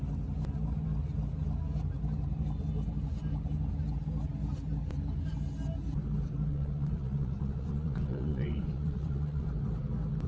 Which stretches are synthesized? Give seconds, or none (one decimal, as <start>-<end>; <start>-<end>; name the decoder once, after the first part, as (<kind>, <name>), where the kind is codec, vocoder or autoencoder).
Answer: 6.5-9.5 (vocoder, Vocos)